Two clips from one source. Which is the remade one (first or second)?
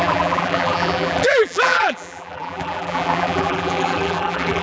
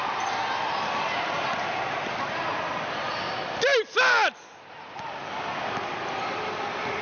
first